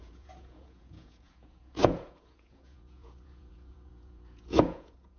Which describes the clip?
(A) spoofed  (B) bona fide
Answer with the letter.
A